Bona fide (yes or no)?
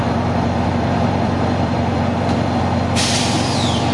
no